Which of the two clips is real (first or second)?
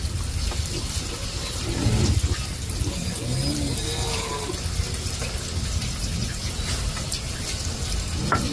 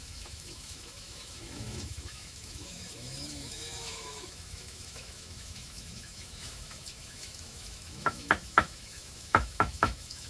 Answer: first